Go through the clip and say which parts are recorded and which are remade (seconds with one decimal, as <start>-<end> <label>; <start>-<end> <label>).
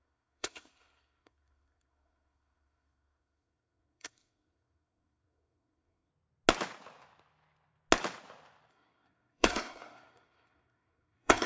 0.0-6.1 remade; 6.1-8.7 recorded; 8.7-11.5 remade